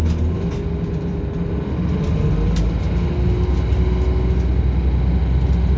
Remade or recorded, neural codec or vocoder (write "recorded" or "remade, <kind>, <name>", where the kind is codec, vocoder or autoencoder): recorded